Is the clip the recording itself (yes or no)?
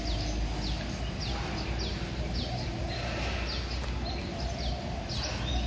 yes